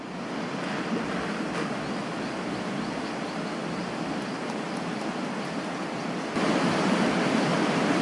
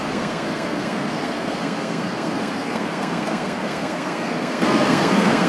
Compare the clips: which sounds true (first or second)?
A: first